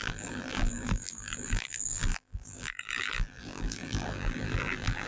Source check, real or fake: fake